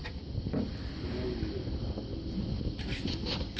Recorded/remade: recorded